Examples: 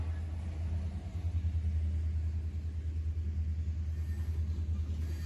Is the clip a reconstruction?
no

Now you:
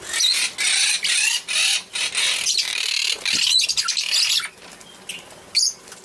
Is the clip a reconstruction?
no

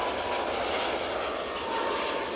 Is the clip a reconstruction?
no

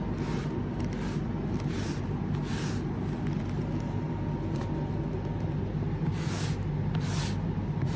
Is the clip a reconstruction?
no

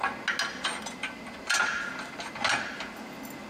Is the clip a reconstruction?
no